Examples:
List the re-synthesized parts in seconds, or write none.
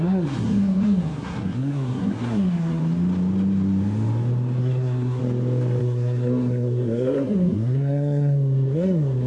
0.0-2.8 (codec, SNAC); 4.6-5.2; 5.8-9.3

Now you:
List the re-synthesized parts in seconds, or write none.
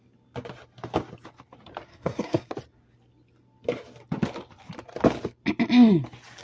1.9-2.5 (codec, SNAC)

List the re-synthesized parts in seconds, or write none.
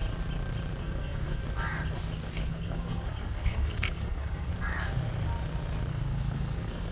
0.8-1.4 (codec, SNAC); 2.5-4.5; 5.9-6.9